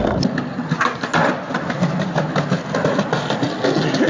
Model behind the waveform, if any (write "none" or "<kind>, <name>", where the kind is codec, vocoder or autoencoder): none